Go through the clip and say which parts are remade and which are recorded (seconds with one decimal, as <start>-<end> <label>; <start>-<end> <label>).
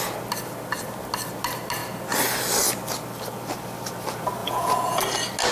0.0-4.4 recorded; 4.4-5.0 remade; 5.0-5.5 recorded